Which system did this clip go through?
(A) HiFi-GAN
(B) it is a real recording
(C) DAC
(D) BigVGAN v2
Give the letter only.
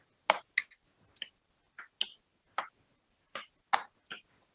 B